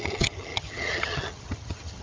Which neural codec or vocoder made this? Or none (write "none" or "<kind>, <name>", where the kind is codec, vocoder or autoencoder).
vocoder, HiFi-GAN